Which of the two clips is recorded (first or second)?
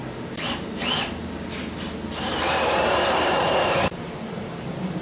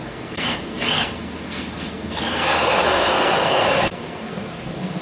first